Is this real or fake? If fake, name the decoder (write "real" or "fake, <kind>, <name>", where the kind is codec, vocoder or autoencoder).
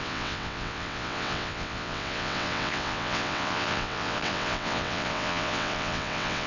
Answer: fake, vocoder, WaveNeXt